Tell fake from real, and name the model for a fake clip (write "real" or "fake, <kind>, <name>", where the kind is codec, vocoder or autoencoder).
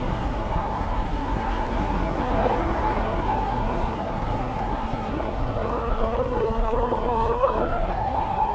fake, codec, SNAC